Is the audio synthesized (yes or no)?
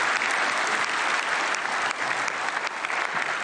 yes